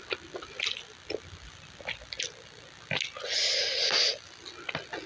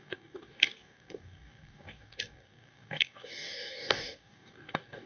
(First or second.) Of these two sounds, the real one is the first